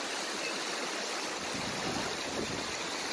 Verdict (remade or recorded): recorded